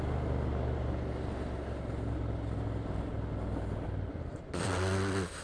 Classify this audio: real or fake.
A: real